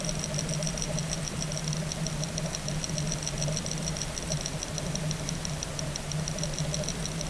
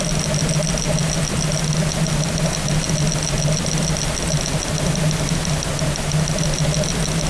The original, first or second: second